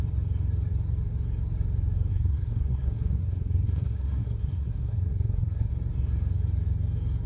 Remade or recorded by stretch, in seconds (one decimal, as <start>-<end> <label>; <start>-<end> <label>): 0.0-2.1 recorded; 2.1-5.7 remade; 5.7-7.3 recorded

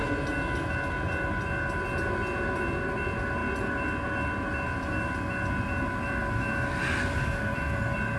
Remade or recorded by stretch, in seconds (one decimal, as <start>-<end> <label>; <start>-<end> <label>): 0.0-8.2 recorded

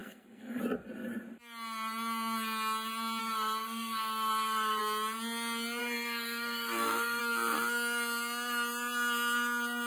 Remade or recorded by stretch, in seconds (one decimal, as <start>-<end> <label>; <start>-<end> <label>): 0.0-0.6 remade; 0.6-3.2 recorded; 3.2-4.8 remade; 4.8-5.8 recorded; 5.8-7.2 remade; 7.2-9.9 recorded

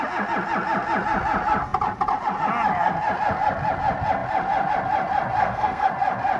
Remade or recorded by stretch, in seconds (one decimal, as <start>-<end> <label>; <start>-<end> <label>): 0.0-5.4 recorded; 5.4-5.9 remade; 5.9-6.4 recorded

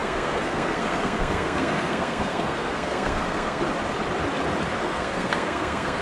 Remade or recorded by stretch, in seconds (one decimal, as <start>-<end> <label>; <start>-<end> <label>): 0.0-3.6 remade; 3.6-4.8 recorded; 4.8-6.0 remade

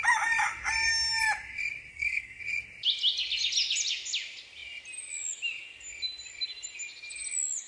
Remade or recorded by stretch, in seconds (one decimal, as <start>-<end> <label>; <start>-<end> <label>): 0.0-1.9 recorded; 1.9-2.4 remade; 2.4-7.7 recorded

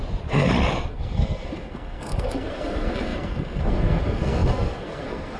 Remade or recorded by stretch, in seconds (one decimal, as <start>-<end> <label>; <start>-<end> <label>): 0.0-0.9 recorded; 0.9-5.4 remade